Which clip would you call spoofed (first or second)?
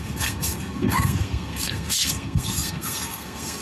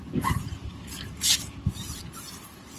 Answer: first